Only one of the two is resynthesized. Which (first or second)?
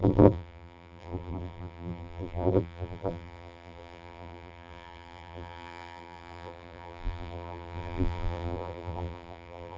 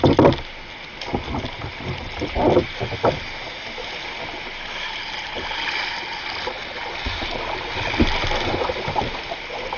first